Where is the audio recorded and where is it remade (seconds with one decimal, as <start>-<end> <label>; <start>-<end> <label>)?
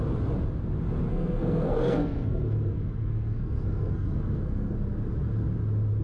0.0-1.1 recorded; 1.1-4.7 remade; 4.7-6.0 recorded